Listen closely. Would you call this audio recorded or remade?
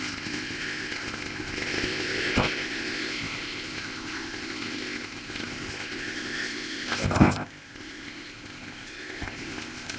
remade